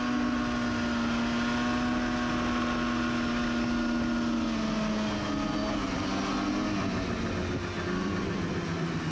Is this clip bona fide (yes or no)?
yes